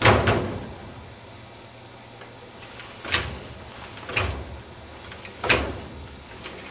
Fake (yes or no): no